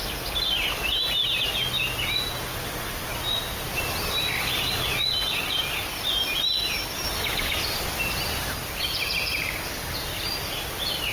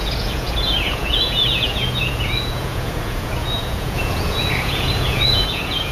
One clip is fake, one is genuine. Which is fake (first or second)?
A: second